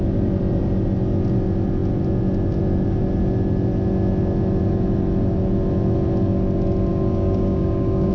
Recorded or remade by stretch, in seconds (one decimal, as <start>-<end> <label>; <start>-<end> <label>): 0.0-6.9 recorded; 6.9-8.1 remade